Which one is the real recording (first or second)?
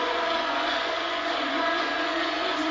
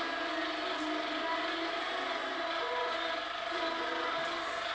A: second